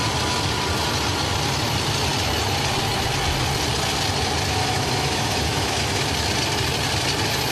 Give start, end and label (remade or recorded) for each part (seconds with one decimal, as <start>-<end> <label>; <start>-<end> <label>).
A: 0.0-4.6 recorded; 4.6-6.0 remade; 6.0-7.5 recorded

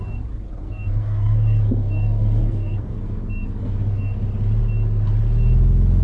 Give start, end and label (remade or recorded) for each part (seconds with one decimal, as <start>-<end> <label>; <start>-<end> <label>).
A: 0.0-0.6 recorded; 0.6-4.2 remade; 4.2-6.0 recorded

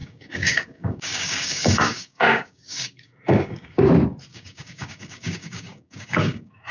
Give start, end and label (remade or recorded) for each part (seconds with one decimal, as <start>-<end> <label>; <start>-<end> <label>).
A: 0.0-3.9 remade; 3.9-4.3 recorded; 4.3-6.7 remade

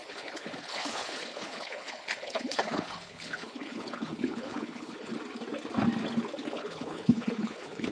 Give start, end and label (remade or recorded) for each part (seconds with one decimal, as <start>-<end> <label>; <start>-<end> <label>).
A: 0.0-5.1 remade; 5.1-6.5 recorded; 6.5-7.9 remade